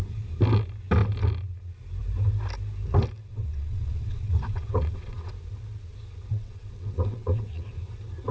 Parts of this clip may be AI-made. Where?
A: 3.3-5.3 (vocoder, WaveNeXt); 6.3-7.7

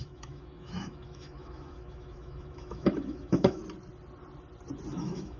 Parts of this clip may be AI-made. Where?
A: 0.0-3.6 (autoencoder, DAC-VAE); 4.9-5.4

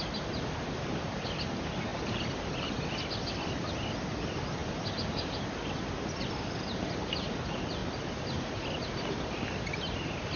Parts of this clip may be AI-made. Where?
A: none

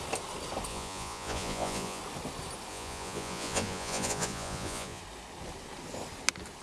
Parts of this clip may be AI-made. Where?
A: 0.7-2.0 (vocoder, Vocos); 2.7-5.0

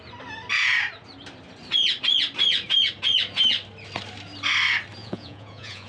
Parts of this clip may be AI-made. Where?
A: 5.0-5.9 (vocoder, Vocos)

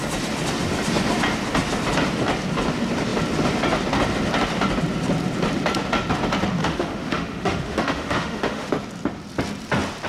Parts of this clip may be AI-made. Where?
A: 6.6-8.7 (autoencoder, DAC-VAE)

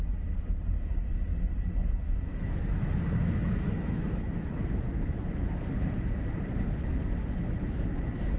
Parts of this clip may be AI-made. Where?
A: 2.3-5.2 (autoencoder, DAC-VAE)